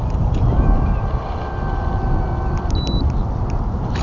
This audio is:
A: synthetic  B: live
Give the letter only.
B